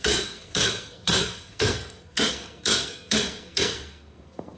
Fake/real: fake